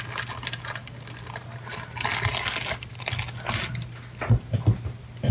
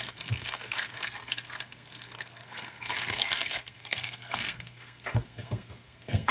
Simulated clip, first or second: second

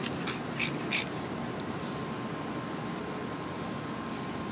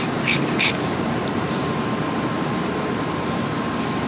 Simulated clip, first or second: second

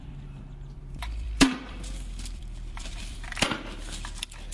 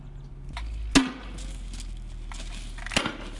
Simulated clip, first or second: first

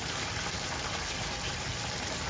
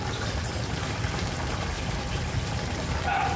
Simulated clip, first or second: second